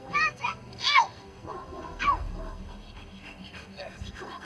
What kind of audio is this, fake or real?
fake